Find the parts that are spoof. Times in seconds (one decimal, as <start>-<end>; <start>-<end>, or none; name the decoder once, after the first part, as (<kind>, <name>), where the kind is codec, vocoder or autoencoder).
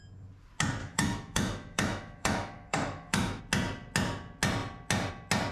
0.8-3.4 (autoencoder, DAC-VAE)